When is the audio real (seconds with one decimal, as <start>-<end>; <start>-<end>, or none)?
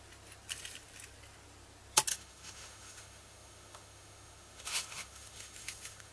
0.0-2.1